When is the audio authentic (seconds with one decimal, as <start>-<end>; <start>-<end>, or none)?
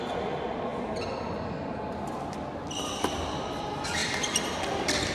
0.0-5.1